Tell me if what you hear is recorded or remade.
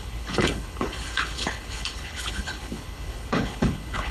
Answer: remade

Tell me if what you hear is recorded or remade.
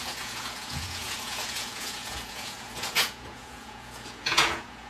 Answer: remade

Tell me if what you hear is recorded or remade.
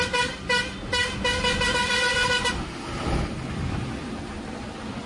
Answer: recorded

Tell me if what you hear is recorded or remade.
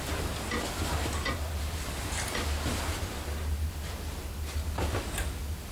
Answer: recorded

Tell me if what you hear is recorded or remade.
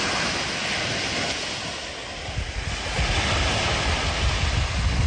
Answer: recorded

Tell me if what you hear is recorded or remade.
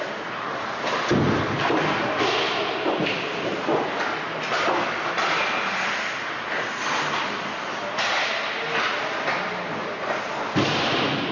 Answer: recorded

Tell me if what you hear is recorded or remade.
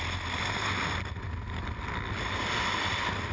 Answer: recorded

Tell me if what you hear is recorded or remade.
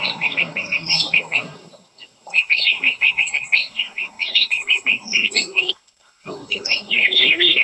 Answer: remade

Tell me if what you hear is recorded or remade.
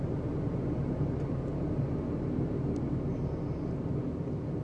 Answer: recorded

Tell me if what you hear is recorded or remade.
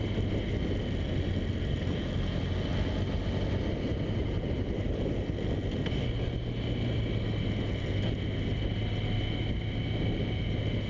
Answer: recorded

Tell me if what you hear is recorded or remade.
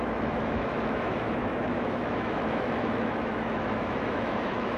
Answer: remade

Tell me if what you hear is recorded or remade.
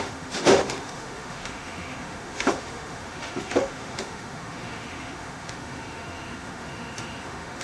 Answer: remade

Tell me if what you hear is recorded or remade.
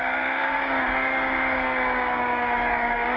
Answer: remade